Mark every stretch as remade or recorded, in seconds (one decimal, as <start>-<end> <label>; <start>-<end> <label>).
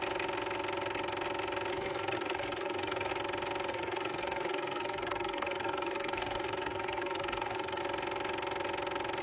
0.0-1.7 recorded; 1.7-3.1 remade; 3.1-3.7 recorded; 3.7-7.8 remade; 7.8-9.2 recorded